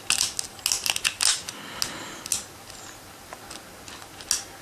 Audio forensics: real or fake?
real